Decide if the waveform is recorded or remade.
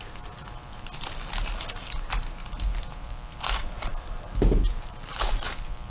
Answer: remade